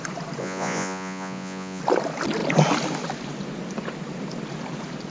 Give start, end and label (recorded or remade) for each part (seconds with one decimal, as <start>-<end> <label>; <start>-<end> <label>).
0.0-0.4 recorded; 0.4-1.8 remade; 1.8-5.1 recorded